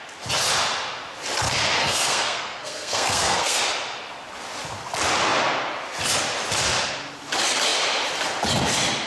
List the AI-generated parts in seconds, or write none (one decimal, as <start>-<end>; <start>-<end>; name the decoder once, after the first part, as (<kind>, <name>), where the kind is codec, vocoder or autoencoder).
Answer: 1.8-3.6 (codec, SNAC)